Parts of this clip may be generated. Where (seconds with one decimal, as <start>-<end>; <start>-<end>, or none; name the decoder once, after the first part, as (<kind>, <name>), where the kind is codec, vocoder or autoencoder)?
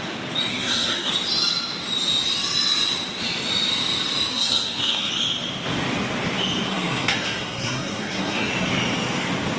0.5-1.1 (codec, SNAC); 4.3-5.1; 6.7-8.5